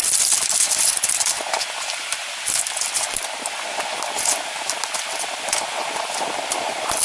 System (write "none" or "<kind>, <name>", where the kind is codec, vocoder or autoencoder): none